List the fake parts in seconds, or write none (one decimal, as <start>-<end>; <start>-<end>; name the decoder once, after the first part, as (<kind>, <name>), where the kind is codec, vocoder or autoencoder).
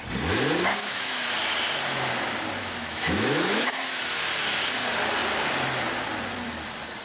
0.8-1.3 (autoencoder, DAC-VAE); 2.6-4.0